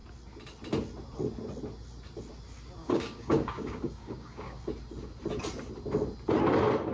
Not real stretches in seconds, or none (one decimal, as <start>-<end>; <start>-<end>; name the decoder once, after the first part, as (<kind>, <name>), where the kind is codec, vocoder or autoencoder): 2.8-4.6 (codec, DAC)